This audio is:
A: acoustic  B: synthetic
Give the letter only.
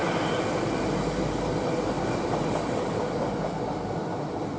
A